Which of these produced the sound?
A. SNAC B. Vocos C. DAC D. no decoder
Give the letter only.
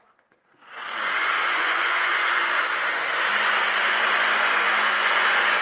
B